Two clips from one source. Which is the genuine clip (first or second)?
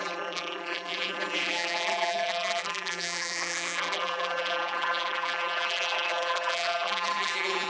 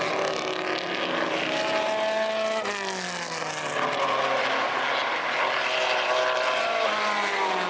second